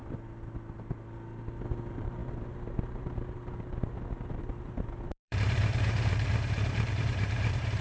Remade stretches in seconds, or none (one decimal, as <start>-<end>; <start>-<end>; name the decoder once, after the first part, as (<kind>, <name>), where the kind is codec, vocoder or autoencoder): 1.6-7.8 (vocoder, BigVGAN v2)